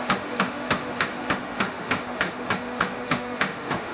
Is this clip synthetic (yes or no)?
yes